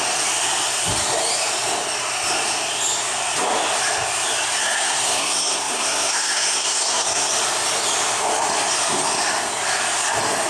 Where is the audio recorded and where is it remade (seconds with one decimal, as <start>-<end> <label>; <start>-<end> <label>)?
0.0-4.6 recorded; 4.6-7.3 remade; 7.3-10.5 recorded